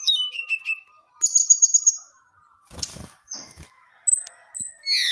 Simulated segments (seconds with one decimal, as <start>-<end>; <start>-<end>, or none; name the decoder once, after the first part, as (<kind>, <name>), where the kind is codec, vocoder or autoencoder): 0.0-0.5 (autoencoder, DAC-VAE); 1.4-2.1; 2.9-3.9